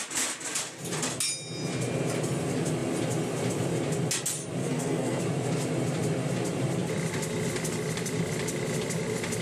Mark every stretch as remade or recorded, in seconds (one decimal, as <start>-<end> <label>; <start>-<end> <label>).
0.0-4.6 recorded; 4.6-5.2 remade; 5.2-9.4 recorded